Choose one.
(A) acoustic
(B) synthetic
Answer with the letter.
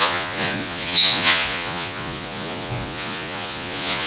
B